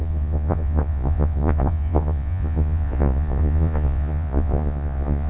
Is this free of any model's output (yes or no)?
no